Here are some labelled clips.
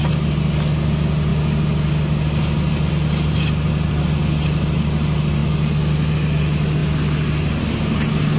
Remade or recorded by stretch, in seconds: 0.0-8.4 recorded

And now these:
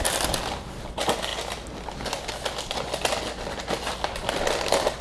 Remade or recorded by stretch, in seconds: 0.0-5.0 recorded

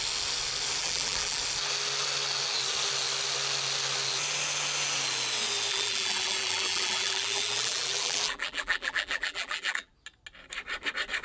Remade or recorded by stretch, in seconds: 0.0-0.8 recorded; 0.8-1.4 remade; 1.4-5.7 recorded; 5.7-9.9 remade; 9.9-11.2 recorded

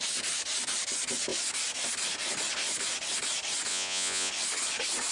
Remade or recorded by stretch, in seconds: 0.0-3.7 recorded; 3.7-4.3 remade; 4.3-5.1 recorded